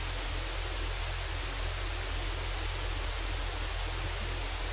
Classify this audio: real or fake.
real